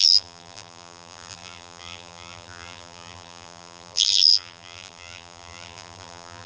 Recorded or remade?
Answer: remade